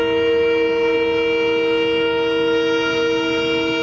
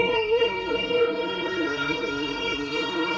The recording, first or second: first